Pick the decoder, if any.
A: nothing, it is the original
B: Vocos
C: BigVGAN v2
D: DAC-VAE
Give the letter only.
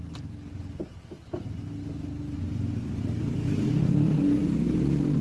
C